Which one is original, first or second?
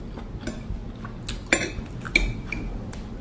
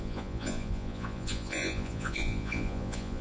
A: first